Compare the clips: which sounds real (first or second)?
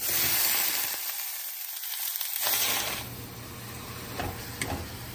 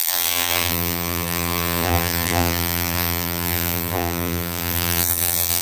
first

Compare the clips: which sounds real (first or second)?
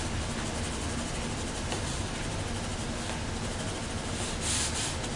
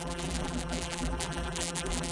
first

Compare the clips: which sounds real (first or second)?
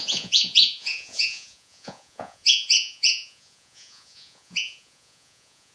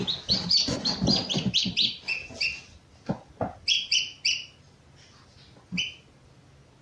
second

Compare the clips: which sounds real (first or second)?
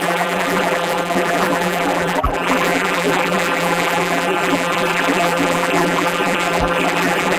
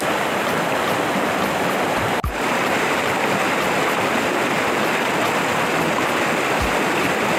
second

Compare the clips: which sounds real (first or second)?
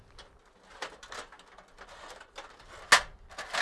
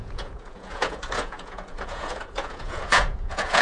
first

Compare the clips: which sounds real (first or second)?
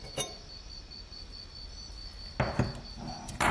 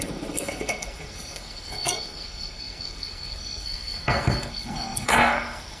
first